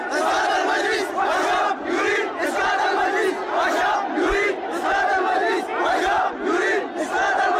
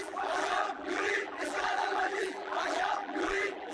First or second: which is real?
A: first